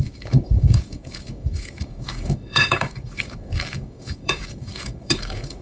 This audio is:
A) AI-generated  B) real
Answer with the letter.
A